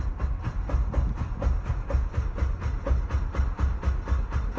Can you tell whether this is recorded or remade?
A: recorded